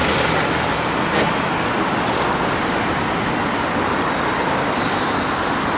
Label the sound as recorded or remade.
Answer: recorded